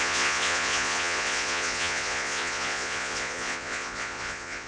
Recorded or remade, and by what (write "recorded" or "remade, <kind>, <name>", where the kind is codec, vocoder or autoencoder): remade, vocoder, Vocos